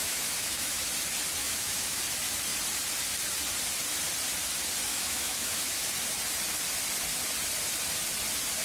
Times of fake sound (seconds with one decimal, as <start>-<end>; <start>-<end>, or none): 0.0-0.9; 1.4-2.0; 4.9-5.9